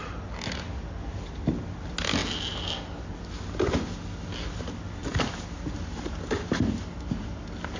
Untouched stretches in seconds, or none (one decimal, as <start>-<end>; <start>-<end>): 0.0-7.8